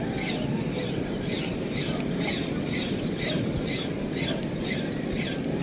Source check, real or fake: real